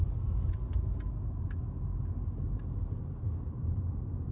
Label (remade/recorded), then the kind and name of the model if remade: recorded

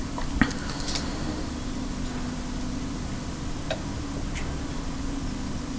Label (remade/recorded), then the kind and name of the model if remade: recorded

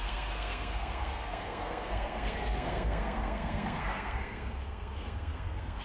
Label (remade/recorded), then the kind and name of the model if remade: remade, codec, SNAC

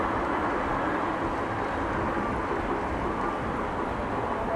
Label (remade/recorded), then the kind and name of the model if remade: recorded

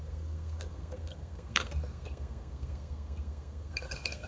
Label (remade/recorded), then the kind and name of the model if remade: remade, codec, SNAC